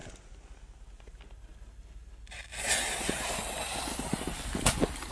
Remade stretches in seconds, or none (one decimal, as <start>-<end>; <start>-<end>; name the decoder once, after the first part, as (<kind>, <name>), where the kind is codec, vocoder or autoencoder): none